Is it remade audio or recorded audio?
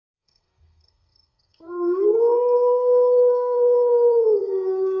remade